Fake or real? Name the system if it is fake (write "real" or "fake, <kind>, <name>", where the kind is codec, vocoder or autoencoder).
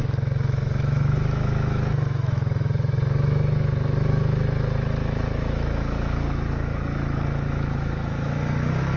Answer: fake, autoencoder, DAC-VAE